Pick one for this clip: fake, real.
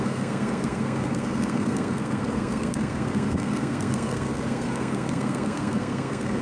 fake